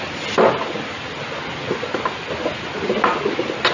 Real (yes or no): yes